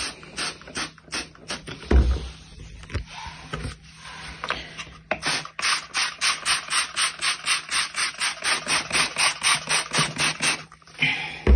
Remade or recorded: recorded